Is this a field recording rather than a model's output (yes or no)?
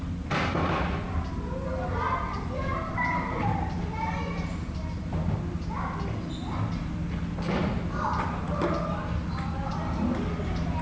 yes